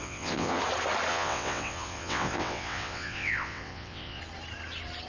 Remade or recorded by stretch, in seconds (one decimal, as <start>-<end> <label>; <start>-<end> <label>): 0.0-0.6 remade; 0.6-1.1 recorded; 1.1-4.2 remade; 4.2-5.1 recorded